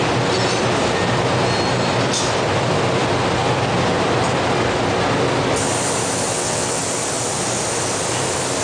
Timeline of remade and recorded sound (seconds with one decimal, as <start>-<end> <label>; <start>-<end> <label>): 0.0-6.3 recorded; 6.3-6.8 remade; 6.8-8.6 recorded

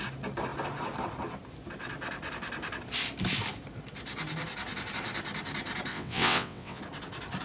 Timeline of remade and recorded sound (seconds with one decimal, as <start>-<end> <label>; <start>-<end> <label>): 0.0-5.9 recorded; 5.9-6.8 remade; 6.8-7.4 recorded

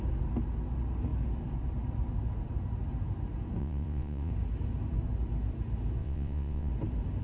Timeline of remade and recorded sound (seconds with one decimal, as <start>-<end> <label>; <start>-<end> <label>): 0.0-3.6 recorded; 3.6-4.3 remade; 4.3-6.0 recorded; 6.0-6.7 remade; 6.7-7.2 recorded

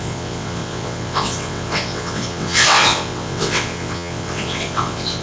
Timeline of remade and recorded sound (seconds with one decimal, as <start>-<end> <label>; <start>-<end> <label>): 0.0-5.2 remade

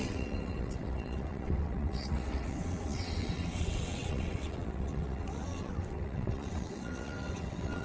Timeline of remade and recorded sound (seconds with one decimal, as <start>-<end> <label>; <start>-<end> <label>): 0.0-7.8 remade

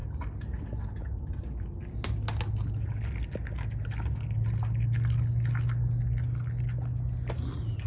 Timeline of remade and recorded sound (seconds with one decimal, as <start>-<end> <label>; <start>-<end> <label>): 0.0-7.9 recorded

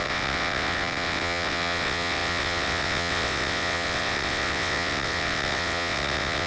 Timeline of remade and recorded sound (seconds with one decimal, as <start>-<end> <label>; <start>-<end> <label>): 0.0-6.5 remade